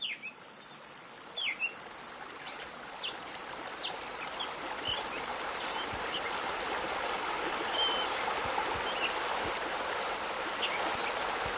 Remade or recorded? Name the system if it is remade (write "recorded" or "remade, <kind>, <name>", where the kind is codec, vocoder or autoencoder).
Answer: recorded